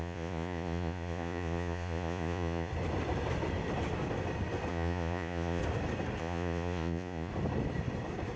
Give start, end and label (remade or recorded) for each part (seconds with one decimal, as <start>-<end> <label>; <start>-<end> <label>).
0.0-2.7 remade; 2.7-4.7 recorded; 4.7-5.6 remade; 5.6-6.2 recorded; 6.2-7.3 remade; 7.3-8.4 recorded